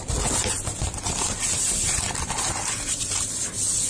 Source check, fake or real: real